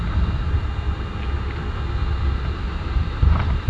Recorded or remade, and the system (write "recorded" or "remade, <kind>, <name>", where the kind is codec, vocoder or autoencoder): recorded